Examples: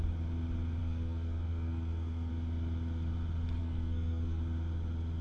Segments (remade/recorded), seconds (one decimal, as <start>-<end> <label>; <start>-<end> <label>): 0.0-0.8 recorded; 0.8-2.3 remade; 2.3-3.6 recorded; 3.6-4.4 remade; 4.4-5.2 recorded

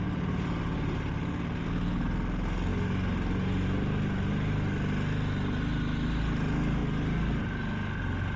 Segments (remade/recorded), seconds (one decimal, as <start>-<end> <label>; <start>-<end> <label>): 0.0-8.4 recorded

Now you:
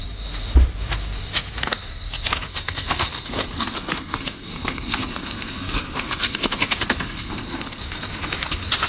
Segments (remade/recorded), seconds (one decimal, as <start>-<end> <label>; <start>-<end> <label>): 0.0-2.5 recorded; 2.5-7.8 remade; 7.8-8.9 recorded